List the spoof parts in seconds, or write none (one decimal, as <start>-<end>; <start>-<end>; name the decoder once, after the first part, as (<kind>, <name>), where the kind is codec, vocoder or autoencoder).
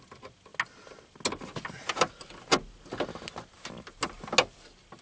none